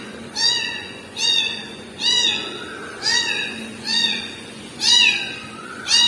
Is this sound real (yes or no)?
no